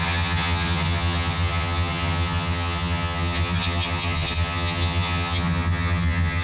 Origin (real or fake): fake